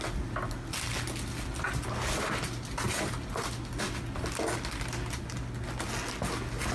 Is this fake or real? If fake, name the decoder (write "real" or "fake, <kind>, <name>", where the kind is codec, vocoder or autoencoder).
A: real